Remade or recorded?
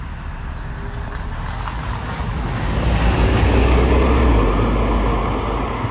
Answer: recorded